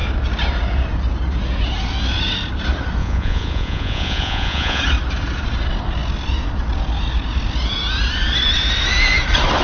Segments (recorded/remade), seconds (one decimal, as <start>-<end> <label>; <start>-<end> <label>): 0.0-3.0 recorded; 3.0-4.8 remade; 4.8-9.6 recorded